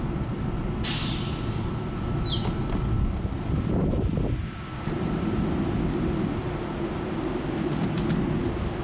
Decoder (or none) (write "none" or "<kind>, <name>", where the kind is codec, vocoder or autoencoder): none